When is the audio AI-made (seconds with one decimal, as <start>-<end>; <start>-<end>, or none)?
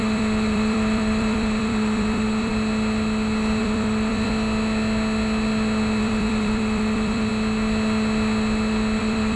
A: 0.0-2.5; 3.6-4.3; 6.0-7.3; 9.0-9.4